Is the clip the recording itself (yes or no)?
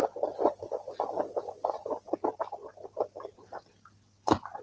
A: yes